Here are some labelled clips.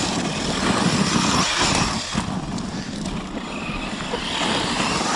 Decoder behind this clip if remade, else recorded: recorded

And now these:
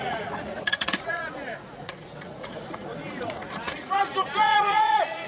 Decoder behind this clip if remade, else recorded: remade, vocoder, Vocos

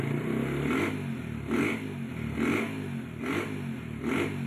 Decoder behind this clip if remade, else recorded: recorded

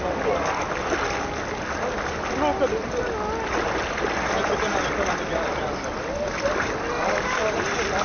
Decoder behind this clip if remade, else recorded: recorded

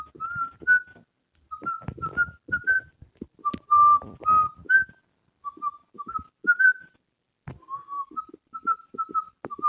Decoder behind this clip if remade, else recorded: recorded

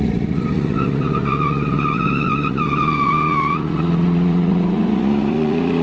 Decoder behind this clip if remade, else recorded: remade, vocoder, Vocos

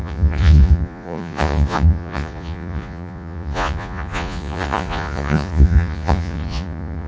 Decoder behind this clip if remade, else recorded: remade, vocoder, Vocos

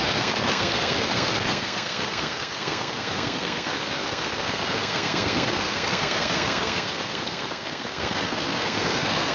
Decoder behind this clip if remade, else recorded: remade, codec, SNAC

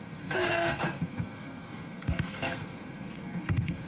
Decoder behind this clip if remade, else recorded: remade, codec, SNAC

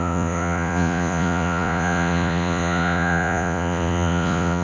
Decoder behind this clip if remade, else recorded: remade, vocoder, Vocos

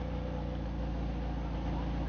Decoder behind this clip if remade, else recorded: recorded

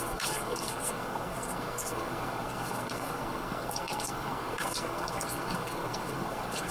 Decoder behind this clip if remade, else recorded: remade, codec, SNAC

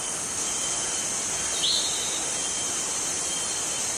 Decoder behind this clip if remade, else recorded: recorded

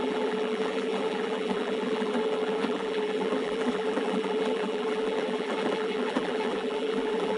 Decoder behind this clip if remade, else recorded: remade, vocoder, BigVGAN v2